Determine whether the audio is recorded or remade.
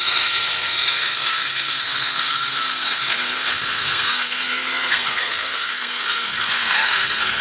remade